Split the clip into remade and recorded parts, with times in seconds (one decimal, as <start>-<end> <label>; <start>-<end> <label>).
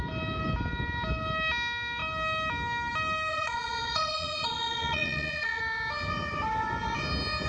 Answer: 0.0-3.3 recorded; 3.3-5.6 remade; 5.6-7.5 recorded